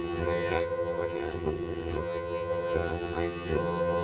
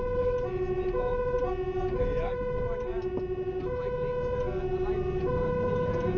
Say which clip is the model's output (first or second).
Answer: first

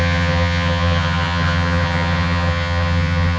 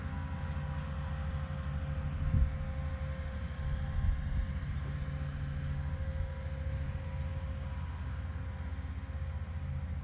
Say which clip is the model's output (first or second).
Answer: first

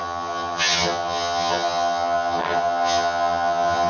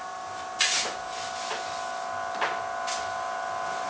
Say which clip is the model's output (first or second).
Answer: first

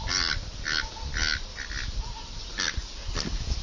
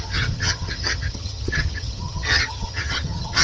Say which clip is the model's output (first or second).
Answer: second